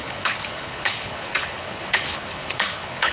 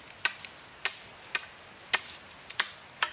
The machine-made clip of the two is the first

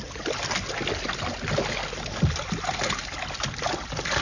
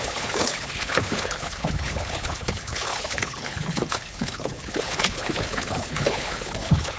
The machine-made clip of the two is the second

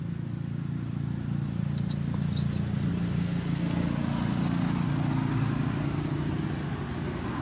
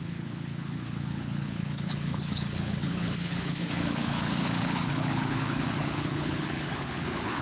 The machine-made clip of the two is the second